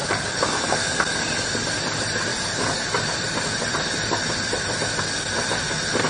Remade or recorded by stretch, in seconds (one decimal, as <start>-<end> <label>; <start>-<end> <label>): 0.0-1.0 remade; 1.0-2.3 recorded; 2.3-3.2 remade; 3.2-6.1 recorded